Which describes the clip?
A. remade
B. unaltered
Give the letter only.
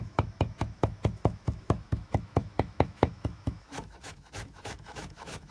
A